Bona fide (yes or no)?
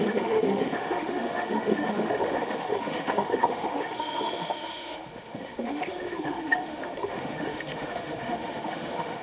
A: no